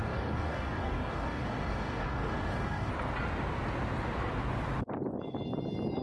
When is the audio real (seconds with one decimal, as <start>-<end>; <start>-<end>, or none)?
2.9-6.0